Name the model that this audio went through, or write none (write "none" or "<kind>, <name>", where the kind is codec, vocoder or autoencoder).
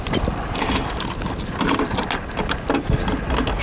none